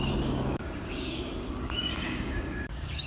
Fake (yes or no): yes